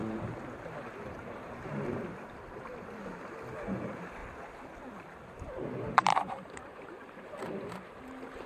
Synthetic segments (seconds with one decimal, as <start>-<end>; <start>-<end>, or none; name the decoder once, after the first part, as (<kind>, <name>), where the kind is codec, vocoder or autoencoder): 0.6-4.2 (vocoder, BigVGAN v2); 4.9-8.5